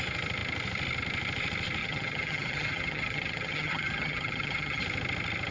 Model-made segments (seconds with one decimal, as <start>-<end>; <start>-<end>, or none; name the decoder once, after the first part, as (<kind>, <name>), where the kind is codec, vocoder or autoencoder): 1.8-4.8 (vocoder, HiFi-GAN)